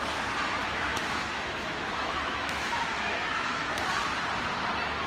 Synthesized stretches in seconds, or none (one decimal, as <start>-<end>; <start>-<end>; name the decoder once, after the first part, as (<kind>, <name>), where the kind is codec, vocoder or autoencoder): 0.6-3.7 (autoencoder, DAC-VAE)